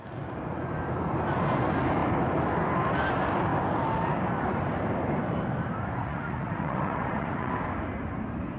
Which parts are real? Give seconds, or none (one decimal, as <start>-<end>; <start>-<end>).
0.0-6.0; 7.5-8.6